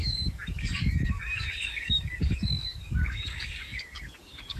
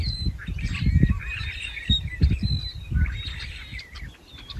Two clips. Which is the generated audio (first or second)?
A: first